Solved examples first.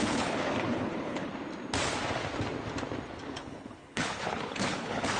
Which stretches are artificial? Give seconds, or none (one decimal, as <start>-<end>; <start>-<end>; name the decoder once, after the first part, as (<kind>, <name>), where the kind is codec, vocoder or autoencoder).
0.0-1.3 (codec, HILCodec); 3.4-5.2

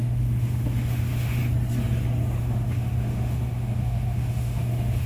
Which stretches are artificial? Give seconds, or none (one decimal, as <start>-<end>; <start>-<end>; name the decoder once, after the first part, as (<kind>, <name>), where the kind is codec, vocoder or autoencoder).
0.0-1.4 (autoencoder, DAC-VAE); 2.4-5.1

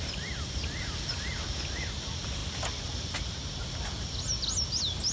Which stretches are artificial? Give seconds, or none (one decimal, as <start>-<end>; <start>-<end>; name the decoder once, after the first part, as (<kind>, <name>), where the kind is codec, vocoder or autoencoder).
none

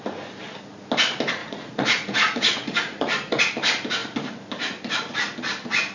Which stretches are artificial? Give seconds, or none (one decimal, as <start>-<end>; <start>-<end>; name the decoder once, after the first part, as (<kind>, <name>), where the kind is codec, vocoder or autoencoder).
1.4-3.4 (vocoder, Vocos)

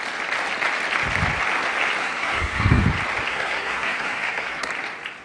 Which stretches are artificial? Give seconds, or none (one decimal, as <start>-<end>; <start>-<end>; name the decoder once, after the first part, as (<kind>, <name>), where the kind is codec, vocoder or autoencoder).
2.0-2.8 (codec, SNAC); 3.3-4.7

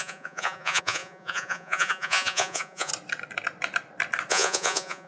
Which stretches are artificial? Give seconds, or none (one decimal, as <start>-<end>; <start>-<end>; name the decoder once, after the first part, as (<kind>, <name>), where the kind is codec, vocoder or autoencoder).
0.0-2.9 (vocoder, Vocos); 4.3-5.1